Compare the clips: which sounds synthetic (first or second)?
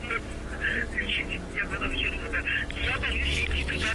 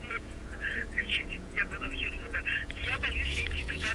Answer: second